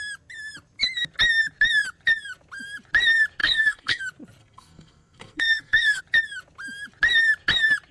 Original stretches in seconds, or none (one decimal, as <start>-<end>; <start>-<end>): 0.0-3.4; 4.0-4.4; 6.0-7.9